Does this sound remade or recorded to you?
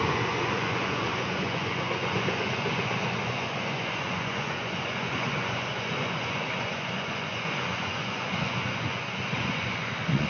remade